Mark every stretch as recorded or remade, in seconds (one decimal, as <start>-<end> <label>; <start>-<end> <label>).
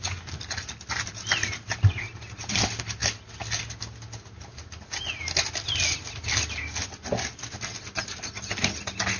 0.0-9.2 recorded